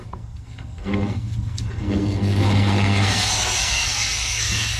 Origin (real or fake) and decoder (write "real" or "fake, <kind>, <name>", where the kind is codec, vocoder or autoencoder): fake, codec, SNAC